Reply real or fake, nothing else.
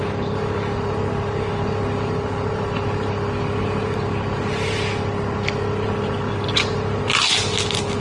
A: real